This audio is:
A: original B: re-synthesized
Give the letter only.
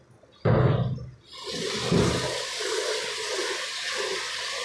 A